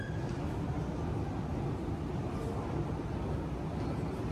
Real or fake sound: real